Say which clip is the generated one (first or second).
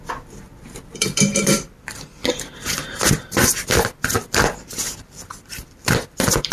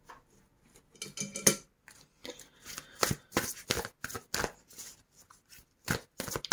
first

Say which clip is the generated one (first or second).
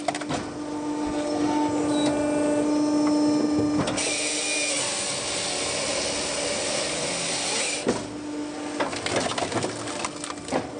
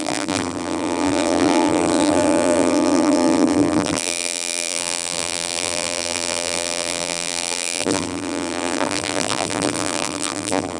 second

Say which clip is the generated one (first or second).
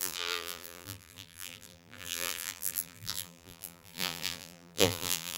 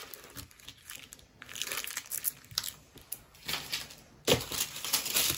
first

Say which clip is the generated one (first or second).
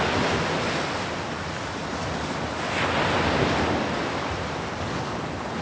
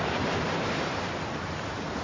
second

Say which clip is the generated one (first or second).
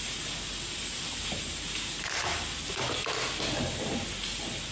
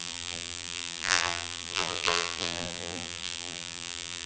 second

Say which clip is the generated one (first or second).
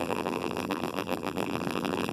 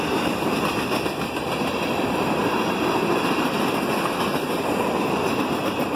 first